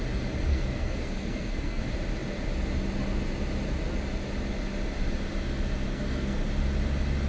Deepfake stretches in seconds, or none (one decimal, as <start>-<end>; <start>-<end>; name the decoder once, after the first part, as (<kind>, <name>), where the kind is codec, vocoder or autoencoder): 0.5-1.8 (codec, SNAC); 5.9-6.5